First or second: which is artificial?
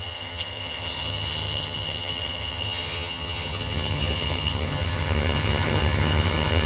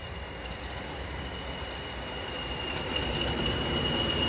first